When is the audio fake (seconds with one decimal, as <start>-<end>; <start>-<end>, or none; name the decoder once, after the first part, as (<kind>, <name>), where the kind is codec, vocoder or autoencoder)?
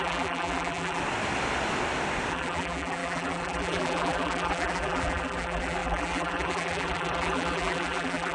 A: 0.0-1.0 (vocoder, BigVGAN v2); 2.3-8.3